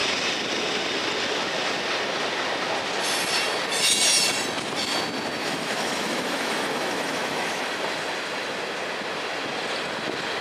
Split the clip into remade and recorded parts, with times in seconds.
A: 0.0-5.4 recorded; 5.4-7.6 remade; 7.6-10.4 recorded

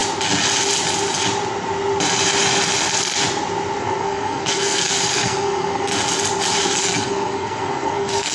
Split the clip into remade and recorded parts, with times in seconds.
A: 0.0-3.8 recorded; 3.8-5.9 remade; 5.9-6.6 recorded; 6.6-8.3 remade

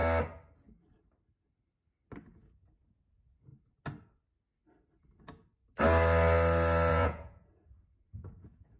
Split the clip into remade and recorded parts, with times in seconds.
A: 0.0-2.3 recorded; 2.3-3.5 remade; 3.5-6.9 recorded; 6.9-8.8 remade